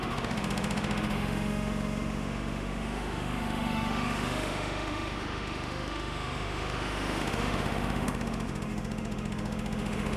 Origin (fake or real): fake